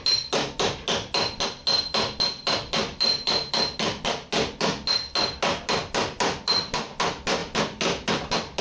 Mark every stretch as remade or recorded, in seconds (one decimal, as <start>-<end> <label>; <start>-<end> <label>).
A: 0.0-8.6 recorded